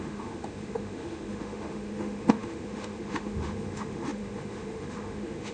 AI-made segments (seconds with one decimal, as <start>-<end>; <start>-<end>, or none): 0.0-5.5